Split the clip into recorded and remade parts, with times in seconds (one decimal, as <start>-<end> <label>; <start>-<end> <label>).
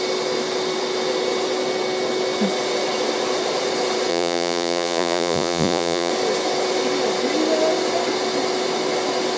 0.0-4.1 recorded; 4.1-6.1 remade; 6.1-9.4 recorded